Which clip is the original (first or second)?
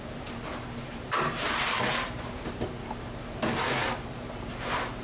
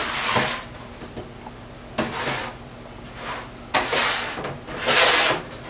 second